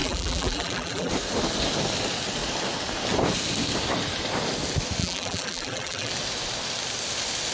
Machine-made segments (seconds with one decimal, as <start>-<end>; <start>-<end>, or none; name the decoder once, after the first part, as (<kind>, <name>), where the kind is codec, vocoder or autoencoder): 0.0-1.1 (vocoder, BigVGAN v2); 5.0-6.1